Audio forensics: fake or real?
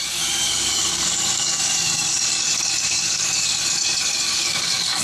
fake